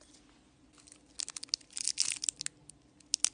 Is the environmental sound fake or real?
real